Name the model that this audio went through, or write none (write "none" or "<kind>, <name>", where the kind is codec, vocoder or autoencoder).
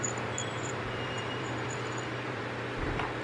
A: vocoder, BigVGAN v2